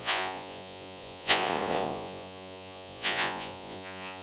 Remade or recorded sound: remade